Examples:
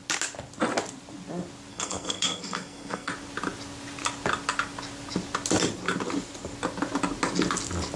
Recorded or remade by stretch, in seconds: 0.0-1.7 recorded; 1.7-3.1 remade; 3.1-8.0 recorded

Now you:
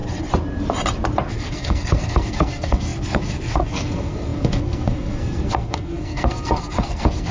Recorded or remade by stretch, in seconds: 0.0-1.3 recorded; 1.3-7.3 remade

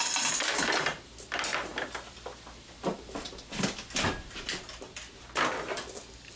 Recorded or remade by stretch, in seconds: 0.0-6.4 recorded

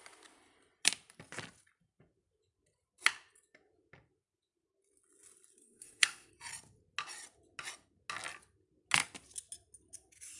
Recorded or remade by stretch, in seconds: 0.0-5.6 recorded; 5.6-6.3 remade; 6.3-10.4 recorded

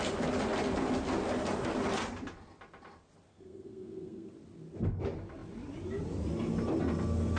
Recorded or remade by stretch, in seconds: 0.0-3.3 recorded; 3.3-4.3 remade; 4.3-7.4 recorded